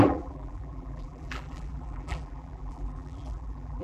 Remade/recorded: remade